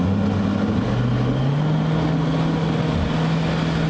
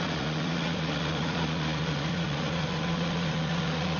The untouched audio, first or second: first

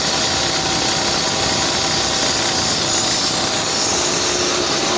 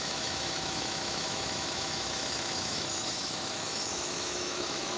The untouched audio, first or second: first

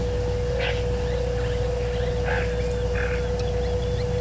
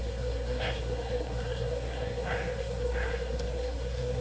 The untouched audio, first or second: first